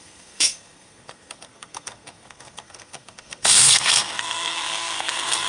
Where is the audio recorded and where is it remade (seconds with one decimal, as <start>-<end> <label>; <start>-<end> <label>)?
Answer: 0.0-5.5 remade